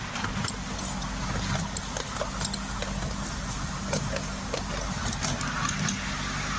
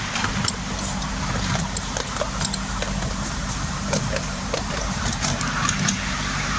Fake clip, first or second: second